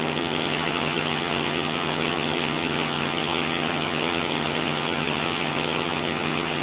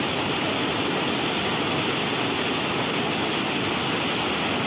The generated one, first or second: first